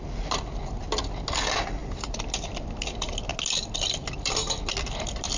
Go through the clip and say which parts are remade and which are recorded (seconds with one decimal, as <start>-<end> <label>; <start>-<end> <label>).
0.0-5.4 recorded